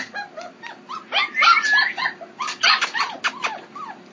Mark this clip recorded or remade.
recorded